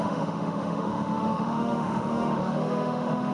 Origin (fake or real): fake